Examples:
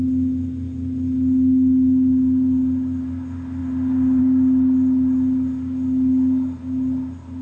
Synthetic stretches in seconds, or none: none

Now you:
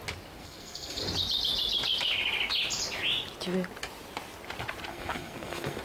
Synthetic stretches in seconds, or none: 0.4-1.0; 4.9-5.8

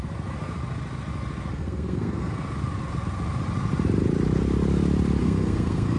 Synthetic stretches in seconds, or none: 1.5-2.4; 5.2-6.0

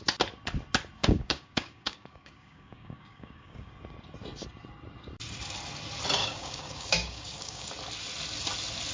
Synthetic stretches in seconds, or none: 1.0-3.7; 6.2-7.7